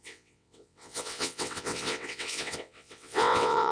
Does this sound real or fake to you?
fake